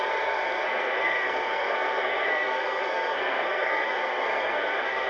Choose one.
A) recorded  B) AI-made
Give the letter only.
B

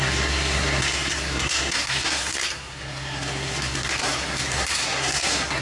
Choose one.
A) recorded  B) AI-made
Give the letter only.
B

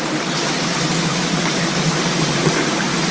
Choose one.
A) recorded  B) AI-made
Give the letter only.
A